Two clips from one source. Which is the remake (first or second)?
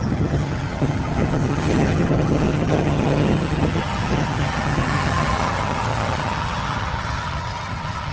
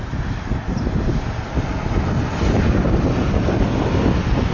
first